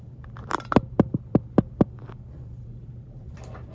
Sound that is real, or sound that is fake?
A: fake